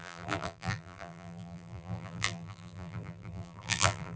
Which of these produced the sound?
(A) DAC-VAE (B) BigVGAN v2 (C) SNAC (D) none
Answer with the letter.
B